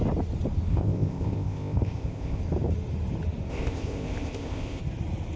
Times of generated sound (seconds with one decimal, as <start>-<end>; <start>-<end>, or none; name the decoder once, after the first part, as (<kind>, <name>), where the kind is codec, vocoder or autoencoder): 0.7-2.4 (codec, ZipCodec); 3.5-4.8